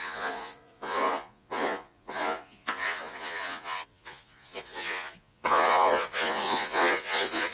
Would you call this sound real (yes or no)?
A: no